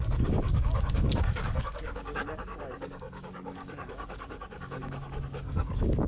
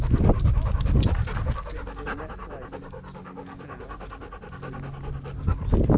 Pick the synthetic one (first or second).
first